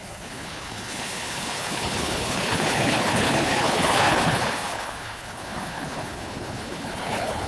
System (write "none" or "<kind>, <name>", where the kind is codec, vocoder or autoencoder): codec, HILCodec